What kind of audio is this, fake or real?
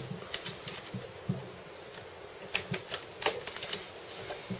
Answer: real